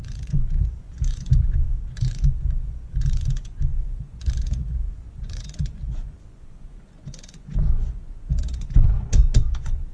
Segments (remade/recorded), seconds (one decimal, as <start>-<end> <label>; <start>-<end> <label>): 0.0-9.9 remade